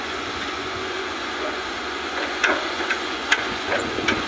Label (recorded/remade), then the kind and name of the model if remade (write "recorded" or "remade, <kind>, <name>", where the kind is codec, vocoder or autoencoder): remade, vocoder, Vocos